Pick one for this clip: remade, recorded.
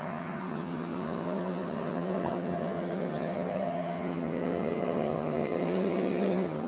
remade